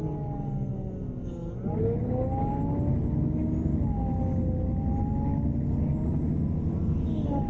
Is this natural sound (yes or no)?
yes